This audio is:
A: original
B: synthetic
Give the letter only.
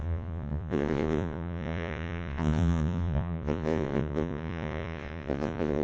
B